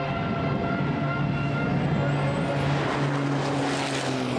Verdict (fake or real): real